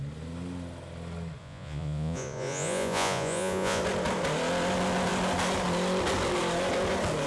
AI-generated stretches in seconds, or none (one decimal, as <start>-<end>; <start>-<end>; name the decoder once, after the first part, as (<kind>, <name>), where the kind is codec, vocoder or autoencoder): 1.4-3.8 (vocoder, Vocos)